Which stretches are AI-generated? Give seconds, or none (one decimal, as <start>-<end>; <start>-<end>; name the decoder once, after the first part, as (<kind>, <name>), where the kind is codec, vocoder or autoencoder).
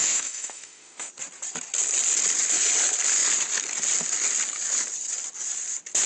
0.0-1.1 (autoencoder, DAC-VAE)